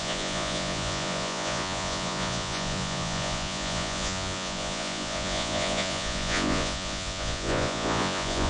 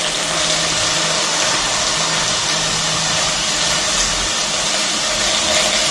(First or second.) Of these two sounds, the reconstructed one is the first